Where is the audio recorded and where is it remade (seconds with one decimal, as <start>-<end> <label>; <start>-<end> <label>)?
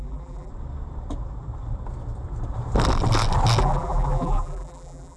0.0-0.5 remade; 0.5-3.6 recorded; 3.6-5.2 remade